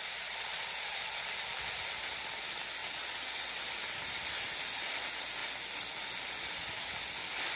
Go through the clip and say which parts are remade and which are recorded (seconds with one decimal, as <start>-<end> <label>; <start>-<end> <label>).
0.0-2.8 recorded; 2.8-3.5 remade; 3.5-7.6 recorded